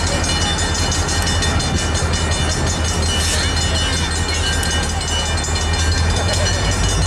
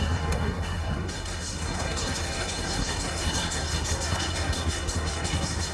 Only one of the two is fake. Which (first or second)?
second